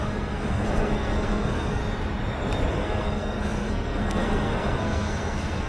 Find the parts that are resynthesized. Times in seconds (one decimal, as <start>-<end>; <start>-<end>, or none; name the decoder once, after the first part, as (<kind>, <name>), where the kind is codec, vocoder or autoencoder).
0.0-1.8 (codec, SNAC); 2.7-5.7